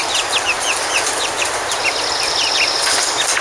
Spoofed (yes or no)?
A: no